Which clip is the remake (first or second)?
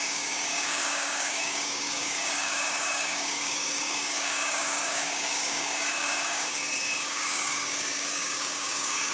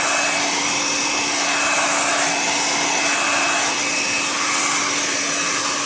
first